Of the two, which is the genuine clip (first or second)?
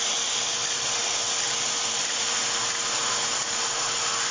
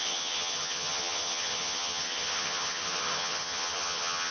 first